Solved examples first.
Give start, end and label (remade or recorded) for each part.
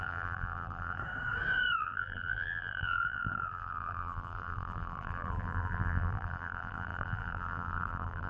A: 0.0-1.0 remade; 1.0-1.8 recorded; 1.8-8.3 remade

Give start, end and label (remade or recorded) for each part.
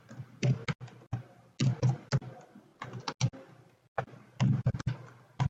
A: 0.0-5.5 recorded